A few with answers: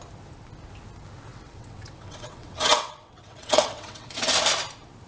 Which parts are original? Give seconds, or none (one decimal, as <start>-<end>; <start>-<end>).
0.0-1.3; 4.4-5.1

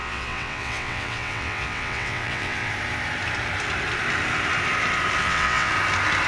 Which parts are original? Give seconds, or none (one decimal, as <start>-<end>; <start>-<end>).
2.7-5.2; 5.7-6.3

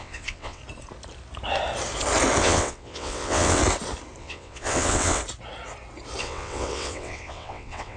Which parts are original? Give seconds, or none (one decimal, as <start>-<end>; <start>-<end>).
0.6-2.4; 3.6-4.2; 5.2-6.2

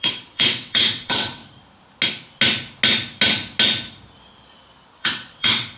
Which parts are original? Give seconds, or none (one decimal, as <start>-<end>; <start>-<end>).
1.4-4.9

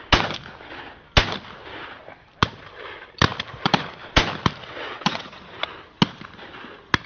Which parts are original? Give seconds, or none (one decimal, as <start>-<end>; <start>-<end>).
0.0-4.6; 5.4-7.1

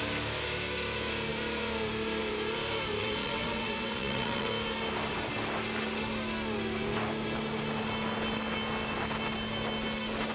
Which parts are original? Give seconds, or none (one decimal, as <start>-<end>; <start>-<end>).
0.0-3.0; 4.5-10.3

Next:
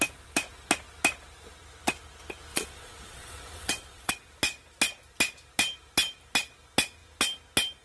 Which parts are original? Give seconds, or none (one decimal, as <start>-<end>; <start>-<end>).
0.0-2.5; 4.1-7.8

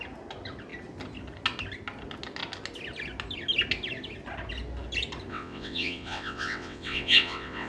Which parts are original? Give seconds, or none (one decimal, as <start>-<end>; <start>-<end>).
0.0-5.3